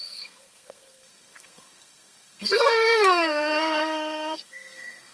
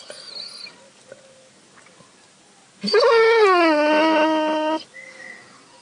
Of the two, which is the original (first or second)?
second